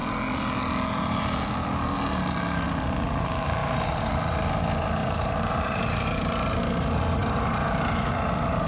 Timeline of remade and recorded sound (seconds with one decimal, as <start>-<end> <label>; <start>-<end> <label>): 0.0-3.6 recorded; 3.6-4.1 remade; 4.1-5.0 recorded; 5.0-5.8 remade; 5.8-7.2 recorded; 7.2-8.1 remade; 8.1-8.7 recorded

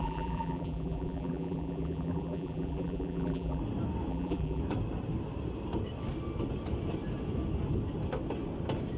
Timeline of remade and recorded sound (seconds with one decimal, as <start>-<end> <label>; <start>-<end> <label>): 0.0-3.6 remade; 3.6-4.1 recorded; 4.1-4.6 remade; 4.6-9.0 recorded

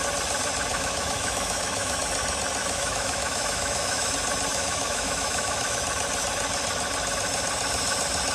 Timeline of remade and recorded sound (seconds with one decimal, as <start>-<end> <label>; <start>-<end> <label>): 0.0-0.7 recorded; 0.7-2.0 remade; 2.0-2.6 recorded; 2.6-4.1 remade; 4.1-4.5 recorded; 4.5-5.8 remade; 5.8-8.3 recorded

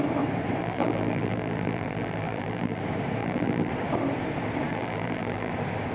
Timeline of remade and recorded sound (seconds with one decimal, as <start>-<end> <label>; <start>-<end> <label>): 0.0-0.6 recorded; 0.6-2.8 remade; 2.8-3.2 recorded; 3.2-3.7 remade; 3.7-4.7 recorded; 4.7-5.5 remade; 5.5-5.9 recorded